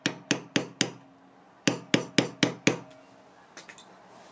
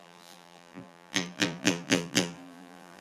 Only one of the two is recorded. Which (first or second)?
first